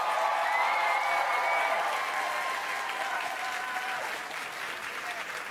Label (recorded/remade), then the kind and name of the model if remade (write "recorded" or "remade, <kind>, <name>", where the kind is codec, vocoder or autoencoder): recorded